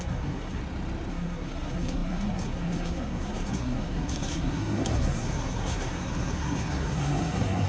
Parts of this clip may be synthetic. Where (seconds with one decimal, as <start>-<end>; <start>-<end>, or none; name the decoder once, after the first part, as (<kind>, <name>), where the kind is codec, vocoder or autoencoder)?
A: 0.0-0.6 (codec, SNAC); 1.1-7.7